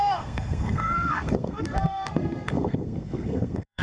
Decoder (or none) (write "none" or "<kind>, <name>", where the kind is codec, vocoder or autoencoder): codec, SNAC